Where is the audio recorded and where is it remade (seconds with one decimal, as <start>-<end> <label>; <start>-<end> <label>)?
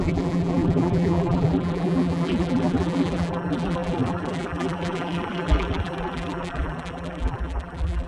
0.0-8.1 remade